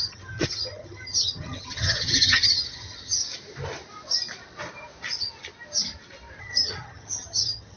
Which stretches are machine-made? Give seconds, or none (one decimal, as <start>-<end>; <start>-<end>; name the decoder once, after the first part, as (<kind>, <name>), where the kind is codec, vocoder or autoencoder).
0.0-3.2 (vocoder, HiFi-GAN); 6.4-7.8